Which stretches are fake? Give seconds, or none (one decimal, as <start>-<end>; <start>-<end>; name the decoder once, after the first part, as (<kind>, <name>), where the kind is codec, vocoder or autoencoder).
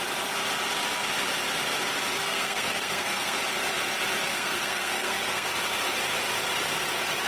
2.2-3.4 (codec, SNAC); 4.3-5.5